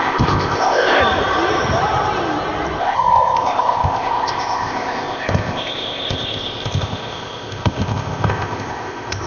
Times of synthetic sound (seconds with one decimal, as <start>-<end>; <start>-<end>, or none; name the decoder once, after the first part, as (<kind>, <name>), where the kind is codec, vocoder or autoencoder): 0.0-1.0 (codec, ZipCodec); 2.8-9.3